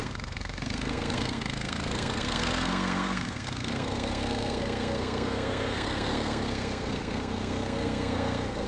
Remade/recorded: remade